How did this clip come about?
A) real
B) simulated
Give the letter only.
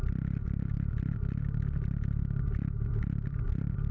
A